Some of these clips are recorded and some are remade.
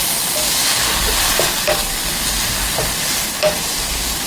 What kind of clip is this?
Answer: recorded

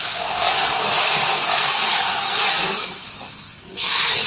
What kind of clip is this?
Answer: remade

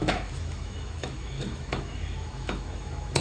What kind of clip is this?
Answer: remade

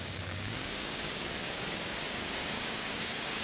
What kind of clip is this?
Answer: remade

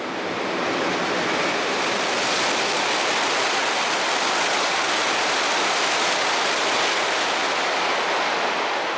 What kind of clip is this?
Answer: recorded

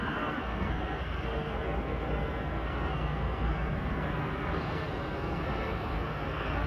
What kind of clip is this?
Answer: remade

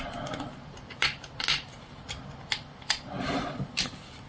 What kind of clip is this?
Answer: recorded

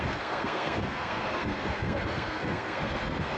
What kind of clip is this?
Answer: remade